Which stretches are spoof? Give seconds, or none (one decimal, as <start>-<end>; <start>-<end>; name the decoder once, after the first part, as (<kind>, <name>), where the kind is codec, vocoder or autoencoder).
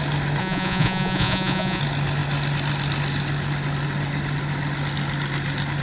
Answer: 0.4-1.8 (vocoder, Vocos)